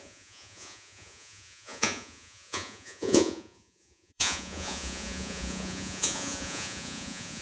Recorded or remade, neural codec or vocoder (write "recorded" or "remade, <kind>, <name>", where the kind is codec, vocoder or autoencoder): remade, vocoder, Vocos